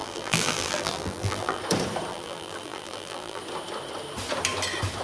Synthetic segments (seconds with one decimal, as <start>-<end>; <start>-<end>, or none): 0.0-1.6; 2.1-3.4